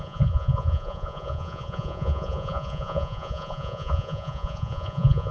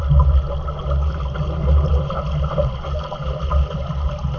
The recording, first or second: second